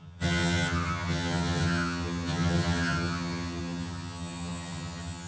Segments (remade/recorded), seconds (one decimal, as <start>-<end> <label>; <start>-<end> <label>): 0.0-5.3 remade